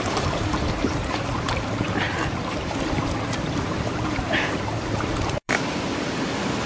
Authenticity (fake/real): fake